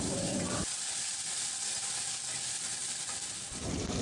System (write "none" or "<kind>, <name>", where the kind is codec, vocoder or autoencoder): none